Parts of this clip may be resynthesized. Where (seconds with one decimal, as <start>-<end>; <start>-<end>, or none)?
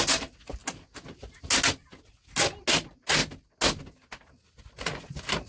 none